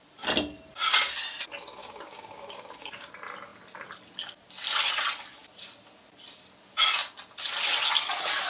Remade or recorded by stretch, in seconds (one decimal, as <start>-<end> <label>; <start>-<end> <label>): 0.0-1.8 recorded; 1.8-3.1 remade; 3.1-8.5 recorded